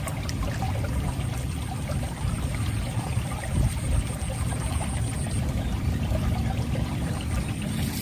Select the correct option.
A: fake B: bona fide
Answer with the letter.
A